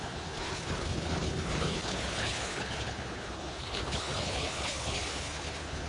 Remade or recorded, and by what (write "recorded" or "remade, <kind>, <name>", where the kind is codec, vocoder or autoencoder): remade, codec, HILCodec